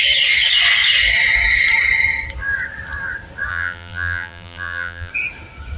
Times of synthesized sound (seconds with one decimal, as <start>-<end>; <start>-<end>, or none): 3.5-5.1